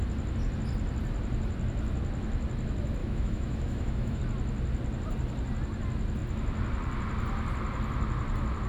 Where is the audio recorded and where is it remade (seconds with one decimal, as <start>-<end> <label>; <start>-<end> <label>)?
0.0-3.0 recorded; 3.0-4.2 remade; 4.2-8.7 recorded